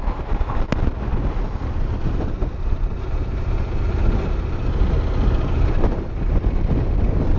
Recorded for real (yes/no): yes